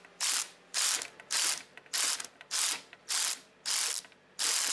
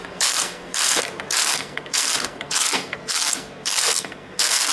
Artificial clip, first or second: second